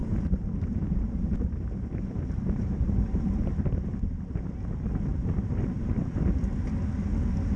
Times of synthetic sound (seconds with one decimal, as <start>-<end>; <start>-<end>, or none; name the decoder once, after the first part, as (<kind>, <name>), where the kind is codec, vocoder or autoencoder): 0.0-3.8 (vocoder, BigVGAN v2); 5.1-5.6

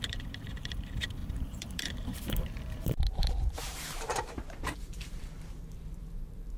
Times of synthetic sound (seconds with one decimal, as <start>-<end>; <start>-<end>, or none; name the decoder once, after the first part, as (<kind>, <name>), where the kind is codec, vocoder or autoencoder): 0.0-6.6 (vocoder, BigVGAN v2)

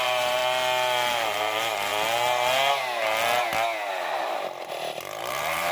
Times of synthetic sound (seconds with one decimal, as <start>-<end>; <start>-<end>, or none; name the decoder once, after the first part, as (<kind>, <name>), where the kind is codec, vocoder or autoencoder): 0.0-0.4 (vocoder, BigVGAN v2); 1.1-1.9; 5.3-5.7

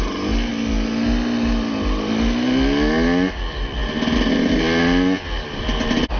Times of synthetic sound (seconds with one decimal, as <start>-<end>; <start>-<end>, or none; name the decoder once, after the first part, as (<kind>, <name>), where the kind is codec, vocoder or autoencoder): none

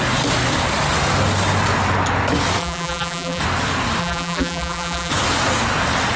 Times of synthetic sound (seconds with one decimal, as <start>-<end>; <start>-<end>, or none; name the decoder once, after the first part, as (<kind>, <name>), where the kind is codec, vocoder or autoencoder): 2.6-3.4 (vocoder, BigVGAN v2); 4.0-5.1

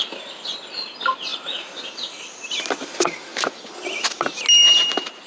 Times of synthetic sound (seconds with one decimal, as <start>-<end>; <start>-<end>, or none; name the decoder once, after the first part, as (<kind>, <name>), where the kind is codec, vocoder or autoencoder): none

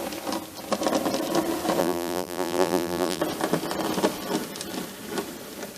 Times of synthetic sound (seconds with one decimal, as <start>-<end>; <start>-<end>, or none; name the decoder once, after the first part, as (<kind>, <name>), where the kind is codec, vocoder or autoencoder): 1.8-3.2 (vocoder, BigVGAN v2)

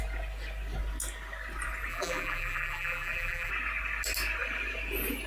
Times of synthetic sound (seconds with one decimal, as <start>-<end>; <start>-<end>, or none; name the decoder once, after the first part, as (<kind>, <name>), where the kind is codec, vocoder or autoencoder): 1.9-3.5 (vocoder, BigVGAN v2)